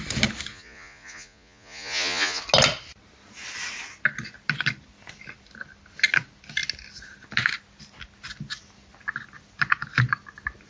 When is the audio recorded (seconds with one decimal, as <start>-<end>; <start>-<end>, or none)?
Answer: 0.0-0.5; 2.4-10.7